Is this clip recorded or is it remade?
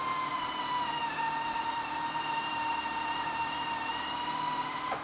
remade